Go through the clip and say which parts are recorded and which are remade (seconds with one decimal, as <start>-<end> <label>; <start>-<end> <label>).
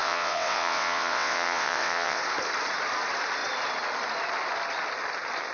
0.0-2.2 remade; 2.2-5.5 recorded